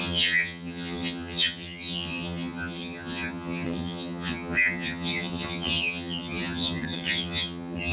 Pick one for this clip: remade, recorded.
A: remade